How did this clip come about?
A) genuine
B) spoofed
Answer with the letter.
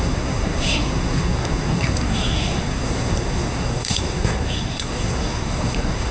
B